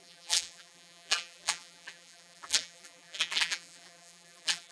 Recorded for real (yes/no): no